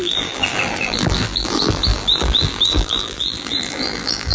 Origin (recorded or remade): remade